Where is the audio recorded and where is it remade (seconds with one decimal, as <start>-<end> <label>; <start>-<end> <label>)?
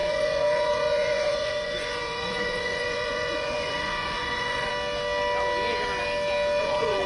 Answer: 0.0-4.7 remade; 4.7-6.6 recorded; 6.6-7.1 remade